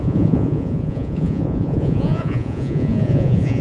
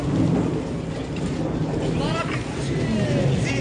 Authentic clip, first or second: second